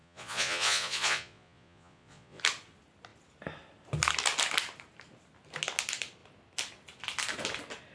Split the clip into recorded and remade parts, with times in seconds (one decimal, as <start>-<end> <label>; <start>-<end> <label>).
0.0-2.4 remade; 2.4-7.9 recorded